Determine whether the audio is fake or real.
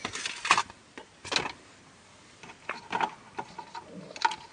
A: real